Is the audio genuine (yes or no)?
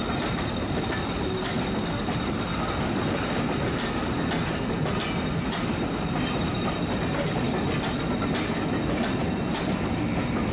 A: yes